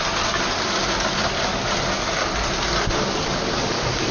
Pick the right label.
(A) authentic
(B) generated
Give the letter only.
A